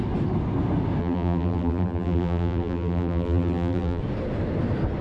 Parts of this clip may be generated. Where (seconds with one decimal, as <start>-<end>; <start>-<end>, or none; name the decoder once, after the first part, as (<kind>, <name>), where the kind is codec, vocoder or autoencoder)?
1.0-4.0 (vocoder, BigVGAN v2)